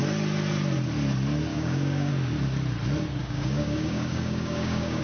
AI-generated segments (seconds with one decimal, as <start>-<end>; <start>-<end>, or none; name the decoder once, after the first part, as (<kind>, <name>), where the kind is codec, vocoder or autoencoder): 1.5-2.1 (codec, DAC); 3.2-5.0